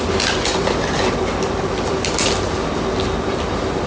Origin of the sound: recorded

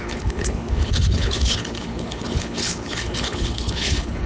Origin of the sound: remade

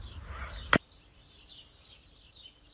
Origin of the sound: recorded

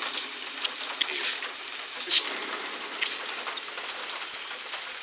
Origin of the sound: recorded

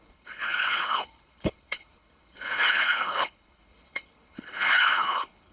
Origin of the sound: remade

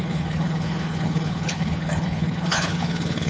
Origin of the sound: remade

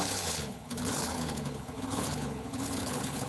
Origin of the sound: remade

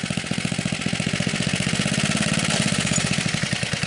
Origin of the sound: recorded